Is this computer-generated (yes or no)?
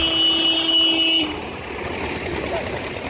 no